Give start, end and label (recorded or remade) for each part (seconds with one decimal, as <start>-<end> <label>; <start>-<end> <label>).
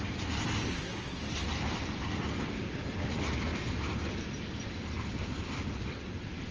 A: 0.0-0.7 recorded; 0.7-1.2 remade; 1.2-6.5 recorded